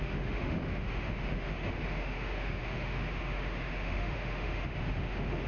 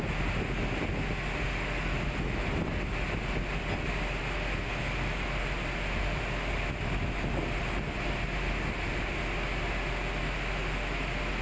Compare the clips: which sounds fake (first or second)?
first